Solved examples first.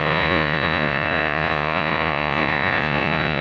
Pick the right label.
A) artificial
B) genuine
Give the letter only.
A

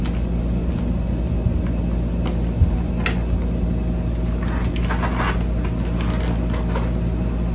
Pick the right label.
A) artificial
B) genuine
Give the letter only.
B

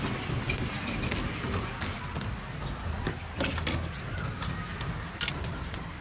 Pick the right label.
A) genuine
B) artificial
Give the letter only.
A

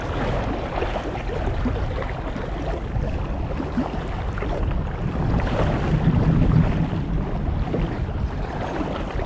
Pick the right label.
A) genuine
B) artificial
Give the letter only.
A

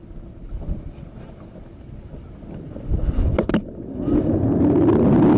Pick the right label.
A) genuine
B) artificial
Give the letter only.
A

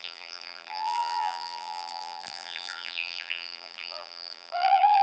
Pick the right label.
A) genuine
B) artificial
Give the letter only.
B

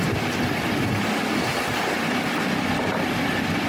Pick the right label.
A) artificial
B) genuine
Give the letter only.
B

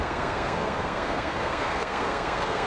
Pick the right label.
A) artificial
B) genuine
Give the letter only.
A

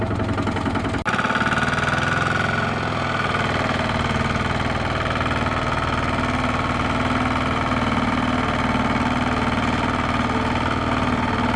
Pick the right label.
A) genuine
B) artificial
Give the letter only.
A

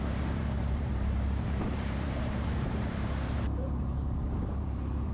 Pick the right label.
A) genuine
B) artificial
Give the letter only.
B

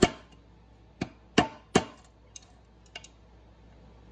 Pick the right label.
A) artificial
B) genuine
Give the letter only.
B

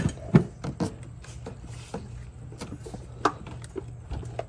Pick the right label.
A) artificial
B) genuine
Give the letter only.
B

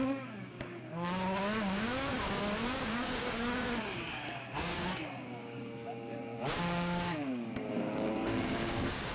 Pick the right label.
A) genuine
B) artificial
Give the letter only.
B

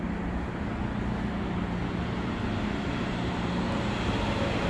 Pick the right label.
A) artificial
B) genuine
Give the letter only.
B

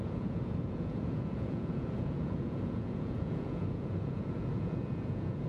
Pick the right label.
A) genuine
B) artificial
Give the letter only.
B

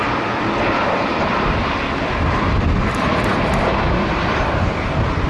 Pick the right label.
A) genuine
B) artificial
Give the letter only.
A